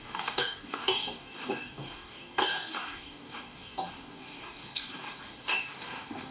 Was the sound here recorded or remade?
remade